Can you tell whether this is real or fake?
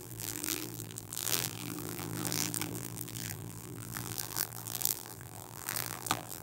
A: fake